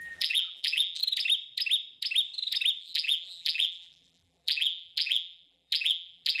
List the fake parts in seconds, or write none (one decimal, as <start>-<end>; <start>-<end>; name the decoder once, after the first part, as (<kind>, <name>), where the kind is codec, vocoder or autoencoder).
0.0-1.0 (vocoder, BigVGAN v2); 2.8-6.4